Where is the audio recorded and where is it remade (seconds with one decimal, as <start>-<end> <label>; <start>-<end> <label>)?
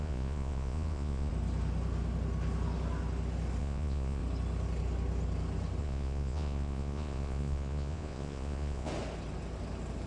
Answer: 0.0-1.3 remade; 1.3-3.6 recorded; 3.6-4.2 remade; 4.2-5.8 recorded; 5.8-8.9 remade; 8.9-10.1 recorded